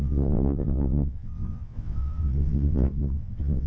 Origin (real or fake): fake